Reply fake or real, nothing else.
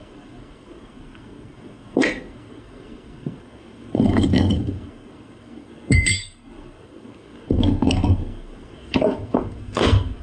fake